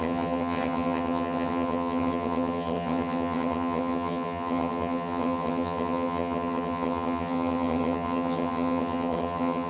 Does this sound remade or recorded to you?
remade